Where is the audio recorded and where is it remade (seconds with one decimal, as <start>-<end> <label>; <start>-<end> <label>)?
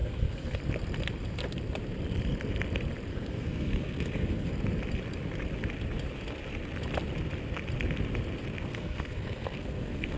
0.0-0.6 remade; 0.6-3.1 recorded; 3.1-4.5 remade; 4.5-8.7 recorded; 8.7-10.2 remade